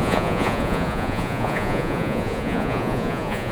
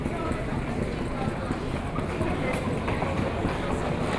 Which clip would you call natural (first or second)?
second